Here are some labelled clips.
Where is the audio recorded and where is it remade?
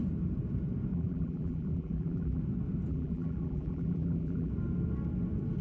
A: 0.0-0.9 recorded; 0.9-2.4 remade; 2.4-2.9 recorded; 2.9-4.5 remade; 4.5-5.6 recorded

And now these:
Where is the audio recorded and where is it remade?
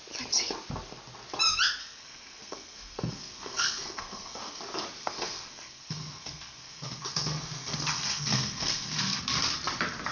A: 0.0-1.8 recorded; 1.8-4.6 remade; 4.6-5.0 recorded; 5.0-9.2 remade; 9.2-10.1 recorded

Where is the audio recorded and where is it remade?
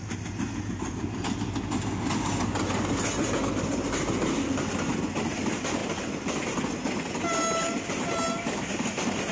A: 0.0-9.3 recorded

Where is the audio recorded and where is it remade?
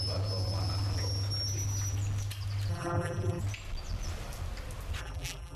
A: 0.0-2.7 recorded; 2.7-3.4 remade; 3.4-5.0 recorded; 5.0-5.6 remade